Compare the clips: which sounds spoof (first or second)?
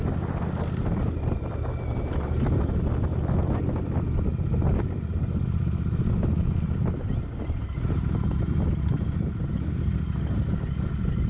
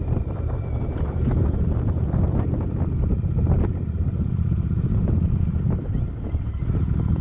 second